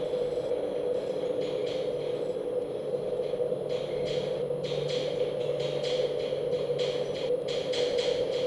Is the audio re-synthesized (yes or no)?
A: no